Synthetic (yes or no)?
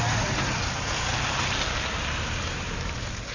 no